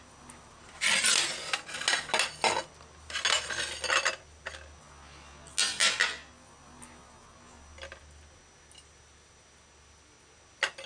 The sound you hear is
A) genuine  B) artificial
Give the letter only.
A